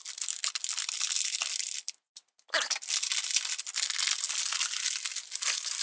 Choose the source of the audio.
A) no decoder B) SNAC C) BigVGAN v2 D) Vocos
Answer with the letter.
A